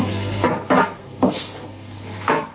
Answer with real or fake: fake